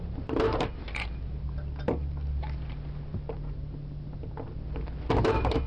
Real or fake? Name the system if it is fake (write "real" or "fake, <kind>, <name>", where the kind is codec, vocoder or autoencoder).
real